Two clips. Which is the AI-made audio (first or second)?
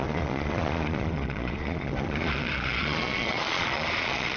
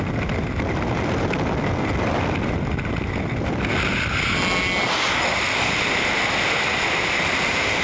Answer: first